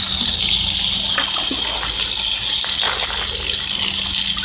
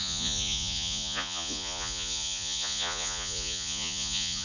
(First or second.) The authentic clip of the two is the first